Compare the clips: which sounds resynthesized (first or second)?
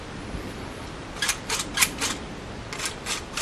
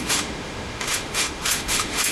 second